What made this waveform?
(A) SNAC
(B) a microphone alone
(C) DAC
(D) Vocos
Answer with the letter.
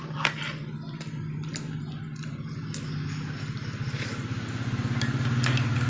B